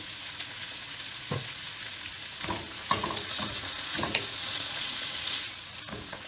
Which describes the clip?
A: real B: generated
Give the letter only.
B